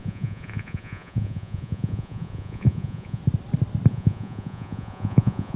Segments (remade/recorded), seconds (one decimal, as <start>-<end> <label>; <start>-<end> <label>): 0.0-3.2 remade; 3.2-3.9 recorded; 3.9-5.6 remade